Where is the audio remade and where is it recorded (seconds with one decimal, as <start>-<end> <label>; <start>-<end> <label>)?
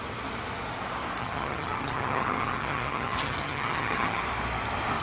0.0-1.2 recorded; 1.2-4.2 remade; 4.2-5.0 recorded